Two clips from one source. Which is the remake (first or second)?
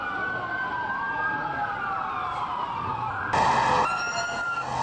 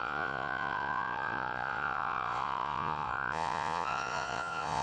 second